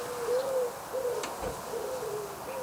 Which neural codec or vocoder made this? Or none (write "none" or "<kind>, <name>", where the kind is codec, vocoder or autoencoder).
none